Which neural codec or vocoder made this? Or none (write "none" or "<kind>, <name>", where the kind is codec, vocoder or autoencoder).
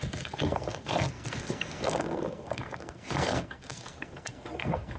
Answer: codec, SNAC